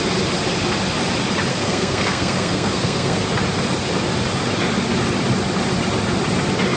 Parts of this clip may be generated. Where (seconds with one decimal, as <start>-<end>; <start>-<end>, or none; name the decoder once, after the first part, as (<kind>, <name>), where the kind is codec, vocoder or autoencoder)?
1.5-3.2 (codec, SNAC)